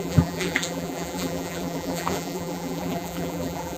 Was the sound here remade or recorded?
remade